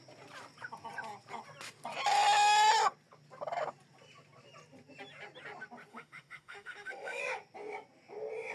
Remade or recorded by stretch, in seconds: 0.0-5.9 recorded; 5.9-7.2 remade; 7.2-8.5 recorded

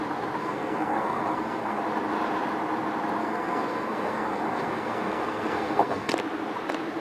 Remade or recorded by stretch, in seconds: 0.0-0.4 recorded; 0.4-1.8 remade; 1.8-3.2 recorded; 3.2-6.1 remade; 6.1-7.0 recorded

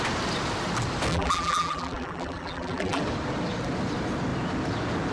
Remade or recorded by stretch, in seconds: 0.0-1.1 recorded; 1.1-3.0 remade; 3.0-5.1 recorded